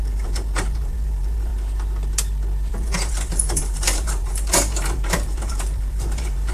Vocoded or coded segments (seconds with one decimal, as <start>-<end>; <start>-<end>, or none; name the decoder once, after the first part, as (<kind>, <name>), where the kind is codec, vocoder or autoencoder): 0.0-1.5 (vocoder, BigVGAN v2); 2.7-6.5